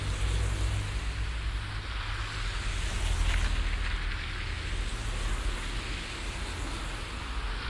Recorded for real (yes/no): yes